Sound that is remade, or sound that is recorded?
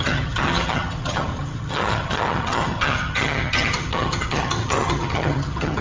remade